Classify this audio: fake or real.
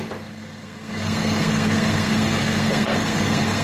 fake